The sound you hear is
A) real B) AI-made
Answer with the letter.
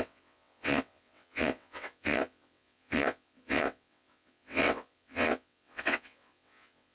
B